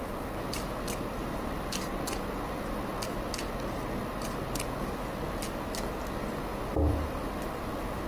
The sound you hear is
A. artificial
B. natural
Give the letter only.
B